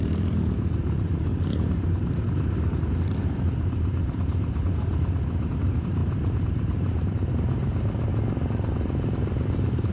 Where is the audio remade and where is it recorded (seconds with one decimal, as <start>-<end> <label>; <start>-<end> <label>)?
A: 0.0-8.1 remade; 8.1-8.7 recorded; 8.7-9.9 remade